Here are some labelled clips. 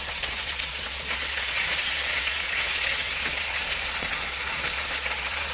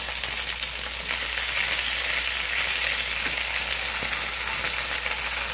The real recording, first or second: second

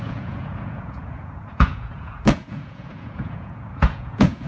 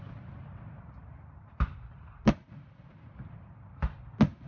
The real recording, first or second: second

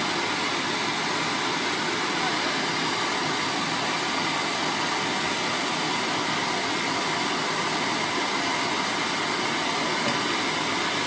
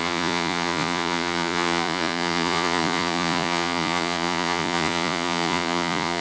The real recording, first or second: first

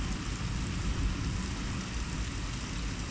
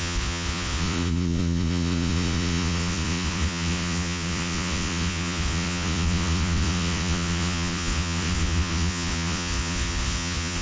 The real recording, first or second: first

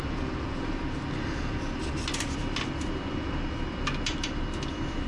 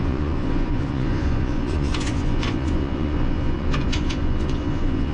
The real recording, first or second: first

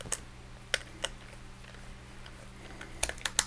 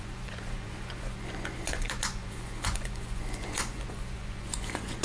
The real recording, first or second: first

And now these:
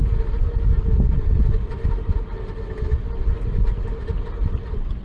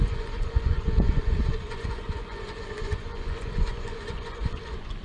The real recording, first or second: first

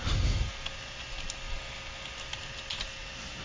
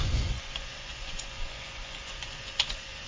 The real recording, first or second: first